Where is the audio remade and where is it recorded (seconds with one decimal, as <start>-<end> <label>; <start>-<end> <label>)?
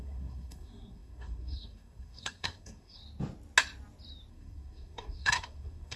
0.0-3.0 remade; 3.0-4.3 recorded; 4.3-6.0 remade